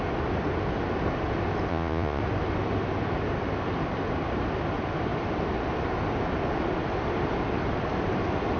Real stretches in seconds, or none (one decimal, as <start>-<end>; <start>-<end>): 0.0-1.7; 2.2-8.6